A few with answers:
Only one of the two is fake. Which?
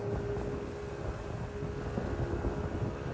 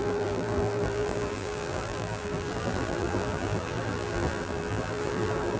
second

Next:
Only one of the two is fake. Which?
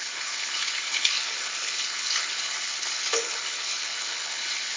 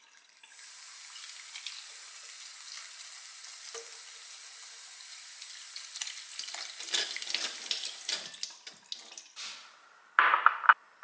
first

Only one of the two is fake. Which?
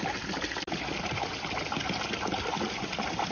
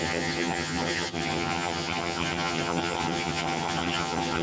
second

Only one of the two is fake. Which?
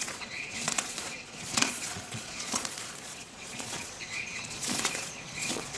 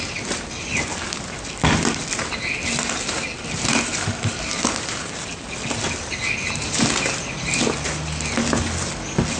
first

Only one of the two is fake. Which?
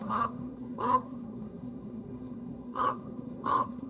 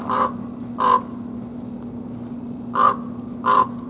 first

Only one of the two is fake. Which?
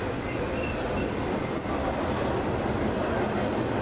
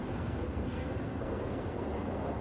second